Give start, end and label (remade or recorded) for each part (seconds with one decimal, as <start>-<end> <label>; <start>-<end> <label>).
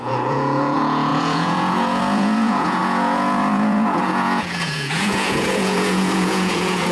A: 0.0-6.9 remade